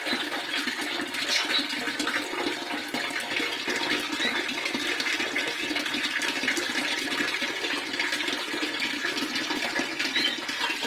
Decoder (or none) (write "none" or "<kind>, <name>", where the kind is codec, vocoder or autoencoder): none